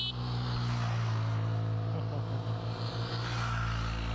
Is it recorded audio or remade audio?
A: recorded